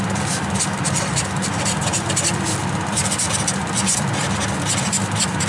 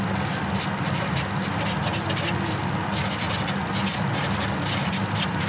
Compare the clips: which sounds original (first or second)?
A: second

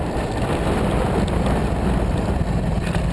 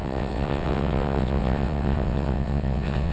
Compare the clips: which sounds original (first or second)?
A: first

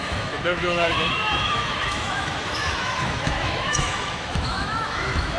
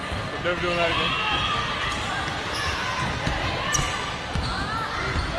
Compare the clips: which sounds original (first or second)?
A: second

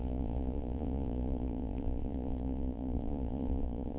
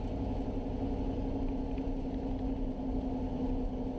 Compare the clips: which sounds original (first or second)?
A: second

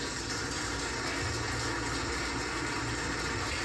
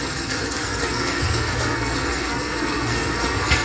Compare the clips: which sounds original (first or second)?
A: first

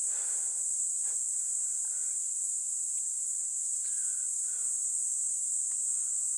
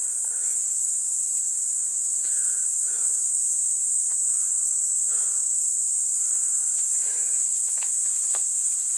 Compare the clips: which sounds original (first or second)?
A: first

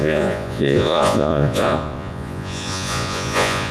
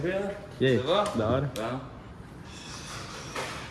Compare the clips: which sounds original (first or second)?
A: second